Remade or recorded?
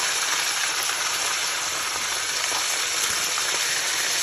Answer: remade